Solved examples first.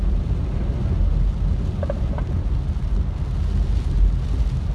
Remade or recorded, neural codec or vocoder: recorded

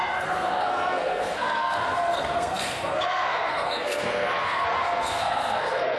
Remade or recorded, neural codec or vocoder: remade, codec, SNAC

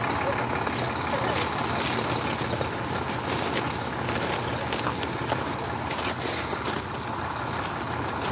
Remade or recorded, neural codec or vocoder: recorded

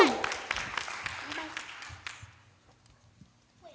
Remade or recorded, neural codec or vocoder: recorded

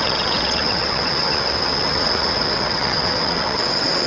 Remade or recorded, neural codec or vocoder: remade, vocoder, WaveNeXt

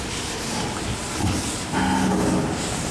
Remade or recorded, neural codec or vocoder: recorded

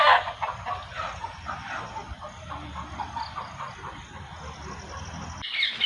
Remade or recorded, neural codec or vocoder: recorded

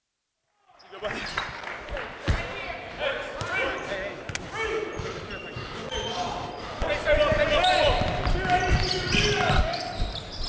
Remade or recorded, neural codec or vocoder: recorded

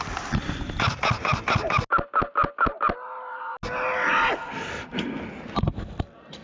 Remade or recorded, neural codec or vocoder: recorded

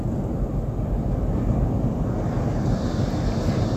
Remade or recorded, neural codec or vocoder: recorded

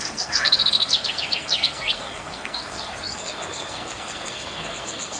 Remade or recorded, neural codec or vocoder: remade, codec, SNAC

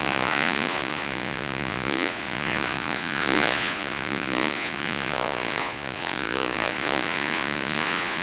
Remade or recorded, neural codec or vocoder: remade, vocoder, Vocos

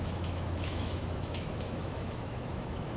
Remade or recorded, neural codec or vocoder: remade, autoencoder, DAC-VAE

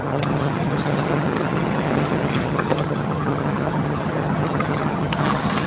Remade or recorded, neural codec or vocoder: remade, vocoder, HiFi-GAN